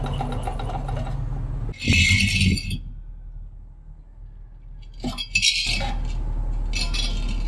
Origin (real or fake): real